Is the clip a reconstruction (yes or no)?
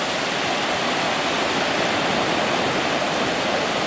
no